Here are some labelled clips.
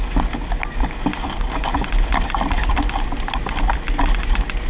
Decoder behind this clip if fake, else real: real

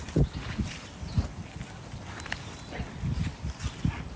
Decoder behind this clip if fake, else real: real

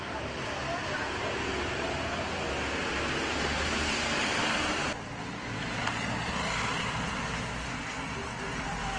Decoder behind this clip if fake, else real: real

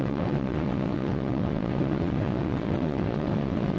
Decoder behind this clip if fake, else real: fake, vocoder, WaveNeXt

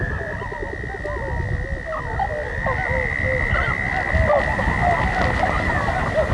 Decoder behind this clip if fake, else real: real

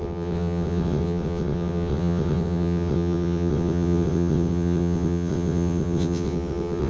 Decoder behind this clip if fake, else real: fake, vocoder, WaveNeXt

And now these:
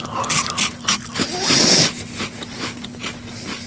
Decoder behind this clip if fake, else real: real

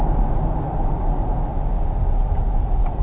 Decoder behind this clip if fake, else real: real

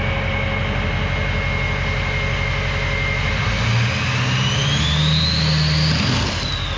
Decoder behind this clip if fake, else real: real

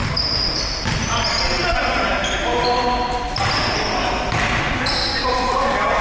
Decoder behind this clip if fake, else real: real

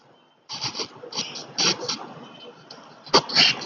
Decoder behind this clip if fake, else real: real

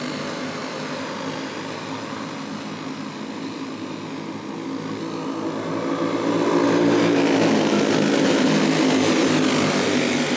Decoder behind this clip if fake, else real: real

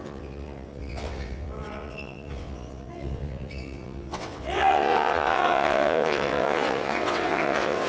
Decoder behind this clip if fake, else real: fake, vocoder, WaveNeXt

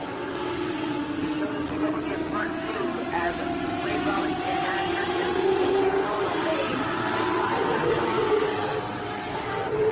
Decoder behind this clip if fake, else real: fake, vocoder, WaveNeXt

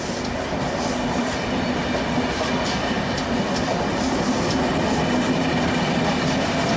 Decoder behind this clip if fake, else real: real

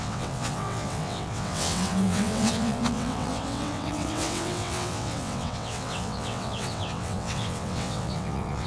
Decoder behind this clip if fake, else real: fake, vocoder, WaveNeXt